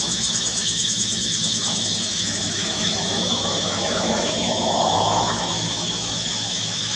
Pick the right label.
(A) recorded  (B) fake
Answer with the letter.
B